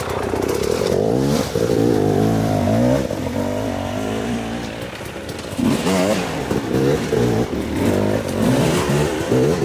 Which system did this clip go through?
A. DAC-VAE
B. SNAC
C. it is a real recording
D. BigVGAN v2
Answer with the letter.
D